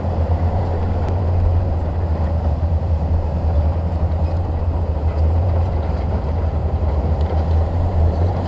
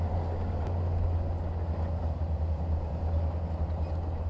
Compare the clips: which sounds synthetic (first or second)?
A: first